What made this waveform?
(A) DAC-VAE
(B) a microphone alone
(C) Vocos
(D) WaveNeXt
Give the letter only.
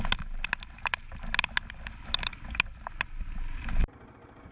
B